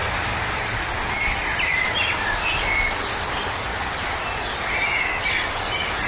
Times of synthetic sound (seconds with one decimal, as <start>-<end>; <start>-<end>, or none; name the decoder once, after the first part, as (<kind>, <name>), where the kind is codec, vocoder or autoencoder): 3.1-3.7 (vocoder, BigVGAN v2)